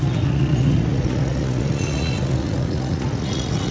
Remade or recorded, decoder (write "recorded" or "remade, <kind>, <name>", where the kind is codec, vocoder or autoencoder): remade, vocoder, Vocos